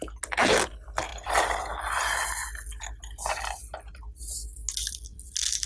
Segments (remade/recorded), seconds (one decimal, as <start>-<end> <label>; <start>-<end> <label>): 0.0-5.7 recorded